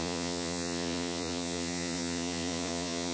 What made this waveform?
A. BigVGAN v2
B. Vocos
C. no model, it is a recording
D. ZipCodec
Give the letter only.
B